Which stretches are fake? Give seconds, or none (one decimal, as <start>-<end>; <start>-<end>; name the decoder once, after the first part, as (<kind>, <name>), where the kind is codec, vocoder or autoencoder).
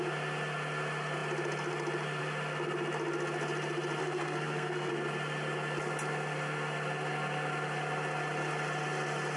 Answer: 4.0-4.9 (codec, SNAC)